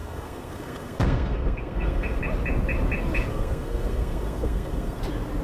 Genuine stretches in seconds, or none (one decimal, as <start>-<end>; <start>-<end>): 2.2-3.3; 5.0-5.4